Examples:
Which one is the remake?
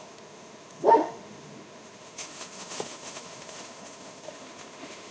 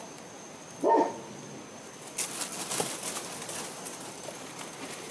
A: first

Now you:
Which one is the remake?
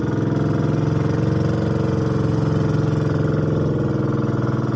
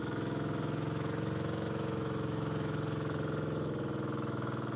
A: second